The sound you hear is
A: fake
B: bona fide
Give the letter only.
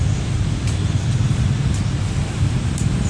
B